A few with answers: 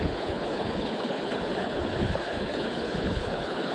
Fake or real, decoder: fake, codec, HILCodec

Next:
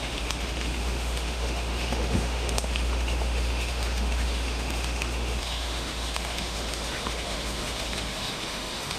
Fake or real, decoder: fake, autoencoder, DAC-VAE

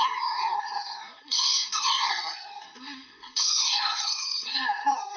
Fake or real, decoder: fake, codec, SNAC